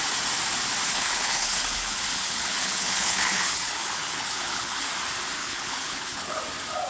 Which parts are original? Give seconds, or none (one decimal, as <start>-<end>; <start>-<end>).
0.0-0.9; 4.9-5.4; 6.4-6.9